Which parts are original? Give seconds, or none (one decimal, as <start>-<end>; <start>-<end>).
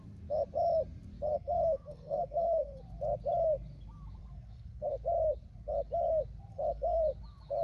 0.0-1.3; 2.8-4.2; 4.9-6.5; 7.0-7.6